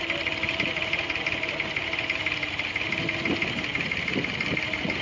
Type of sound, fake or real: real